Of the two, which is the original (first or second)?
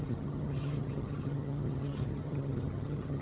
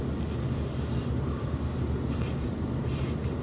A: second